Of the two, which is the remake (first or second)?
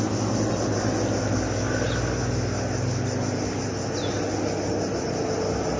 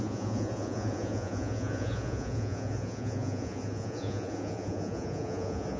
second